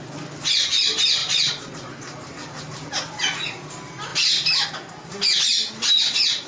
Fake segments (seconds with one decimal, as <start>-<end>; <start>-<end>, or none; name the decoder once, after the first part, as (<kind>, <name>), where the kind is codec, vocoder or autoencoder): 1.2-1.9 (vocoder, Vocos)